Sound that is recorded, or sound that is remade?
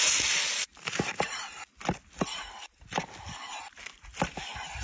recorded